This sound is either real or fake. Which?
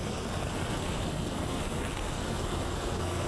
fake